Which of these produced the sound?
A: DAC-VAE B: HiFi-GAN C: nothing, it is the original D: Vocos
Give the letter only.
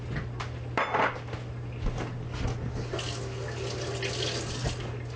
C